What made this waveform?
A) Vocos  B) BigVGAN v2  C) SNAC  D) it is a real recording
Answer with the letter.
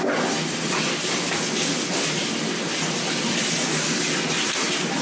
D